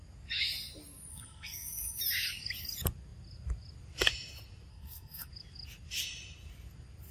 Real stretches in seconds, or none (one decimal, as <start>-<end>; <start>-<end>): 0.0-1.1; 2.0-4.7; 5.3-7.1